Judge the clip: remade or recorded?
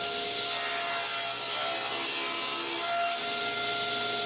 recorded